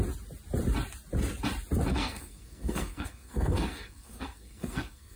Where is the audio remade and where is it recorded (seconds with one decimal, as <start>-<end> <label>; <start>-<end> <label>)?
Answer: 0.0-1.9 recorded; 1.9-5.2 remade